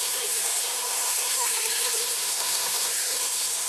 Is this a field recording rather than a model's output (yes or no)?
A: no